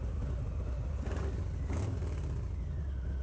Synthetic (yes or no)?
no